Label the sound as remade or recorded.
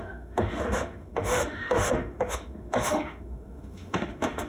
remade